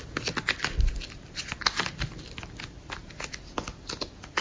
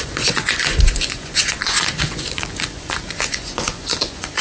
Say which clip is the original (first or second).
first